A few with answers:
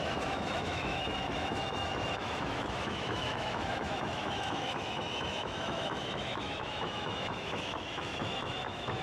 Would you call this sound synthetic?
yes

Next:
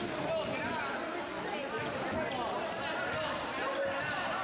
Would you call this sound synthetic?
no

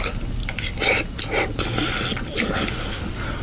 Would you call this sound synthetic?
no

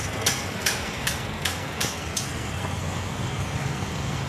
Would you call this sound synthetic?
yes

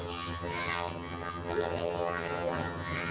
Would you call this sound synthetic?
yes